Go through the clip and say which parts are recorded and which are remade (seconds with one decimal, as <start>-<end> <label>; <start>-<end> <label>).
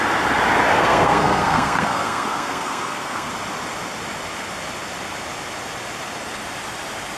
0.0-0.7 recorded; 0.7-3.3 remade; 3.3-7.2 recorded